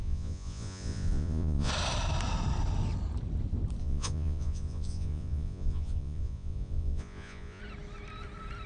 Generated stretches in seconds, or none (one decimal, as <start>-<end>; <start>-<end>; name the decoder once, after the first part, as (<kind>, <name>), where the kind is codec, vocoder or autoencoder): 0.0-1.7 (vocoder, Vocos); 3.8-7.6